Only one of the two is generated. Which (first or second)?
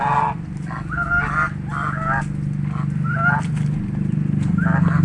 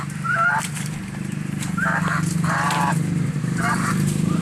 second